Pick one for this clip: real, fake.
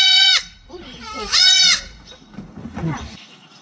fake